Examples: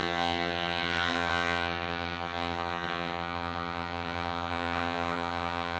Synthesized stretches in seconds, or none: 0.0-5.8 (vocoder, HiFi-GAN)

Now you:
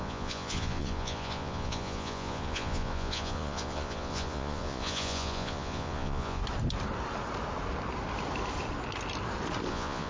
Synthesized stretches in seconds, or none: 0.0-6.4 (vocoder, Vocos); 9.7-10.1

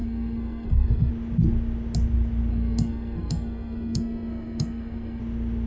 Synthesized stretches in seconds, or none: 0.0-1.1 (codec, SNAC); 2.5-5.2

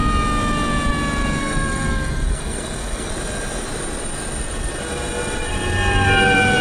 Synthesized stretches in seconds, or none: 1.4-3.1 (codec, SNAC)

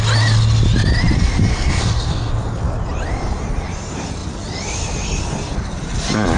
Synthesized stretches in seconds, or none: 1.5-2.3 (codec, SNAC)

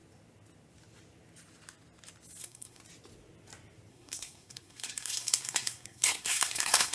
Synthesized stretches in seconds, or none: 2.4-2.8 (codec, SNAC); 3.9-6.9

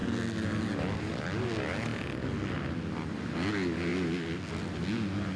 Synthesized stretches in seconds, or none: none